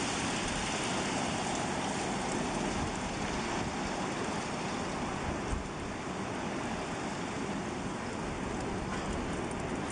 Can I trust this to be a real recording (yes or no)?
yes